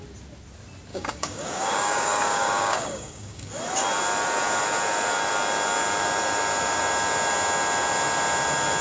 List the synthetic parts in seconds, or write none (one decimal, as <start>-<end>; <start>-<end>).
0.9-3.5

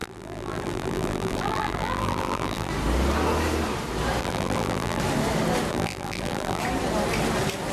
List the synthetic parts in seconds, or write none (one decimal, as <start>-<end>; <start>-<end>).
0.0-2.7; 4.2-5.0; 5.7-6.6

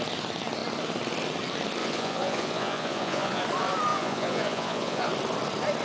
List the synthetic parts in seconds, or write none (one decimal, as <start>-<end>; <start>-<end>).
1.8-3.4; 3.9-5.1

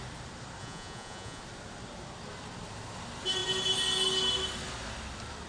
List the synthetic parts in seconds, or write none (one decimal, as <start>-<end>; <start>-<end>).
0.6-1.4

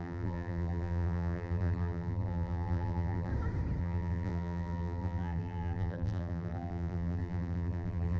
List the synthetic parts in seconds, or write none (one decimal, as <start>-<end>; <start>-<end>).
0.0-3.3; 3.8-8.2

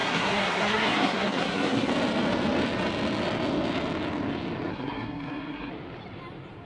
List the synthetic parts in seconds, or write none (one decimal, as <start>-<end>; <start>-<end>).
0.0-1.9; 4.7-5.7

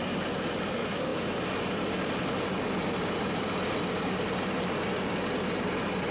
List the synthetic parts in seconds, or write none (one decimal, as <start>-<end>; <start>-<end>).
none

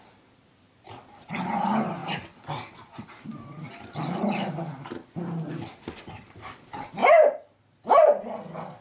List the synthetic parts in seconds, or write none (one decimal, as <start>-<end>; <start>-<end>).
none